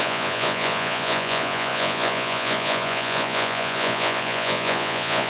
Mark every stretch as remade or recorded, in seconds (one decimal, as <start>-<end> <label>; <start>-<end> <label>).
0.0-5.3 remade